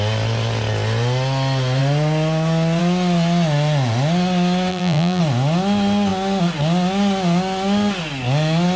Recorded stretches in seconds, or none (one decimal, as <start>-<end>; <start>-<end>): 0.0-4.7; 5.2-8.8